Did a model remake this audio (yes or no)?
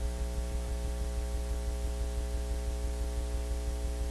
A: no